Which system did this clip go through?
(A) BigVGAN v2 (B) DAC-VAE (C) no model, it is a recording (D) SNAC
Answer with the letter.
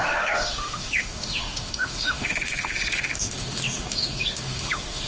B